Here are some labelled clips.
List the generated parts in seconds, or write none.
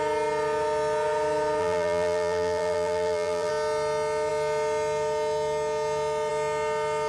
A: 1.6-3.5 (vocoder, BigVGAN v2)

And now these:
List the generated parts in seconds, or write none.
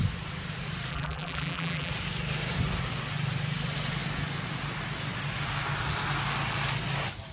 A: 0.9-1.9 (vocoder, BigVGAN v2)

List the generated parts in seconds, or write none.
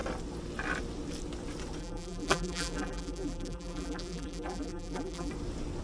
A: 1.8-5.3 (vocoder, BigVGAN v2)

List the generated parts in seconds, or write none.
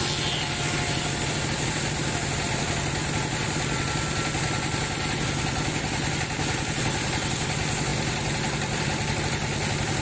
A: none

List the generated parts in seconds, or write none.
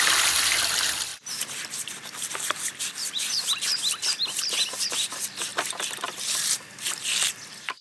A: 1.1-4.9 (vocoder, BigVGAN v2); 5.5-6.9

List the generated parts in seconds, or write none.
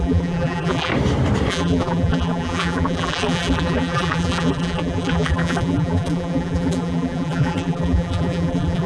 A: 0.0-0.9 (vocoder, BigVGAN v2); 1.5-8.9